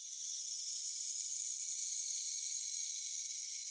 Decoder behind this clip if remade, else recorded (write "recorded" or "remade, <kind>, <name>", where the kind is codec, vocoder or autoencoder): recorded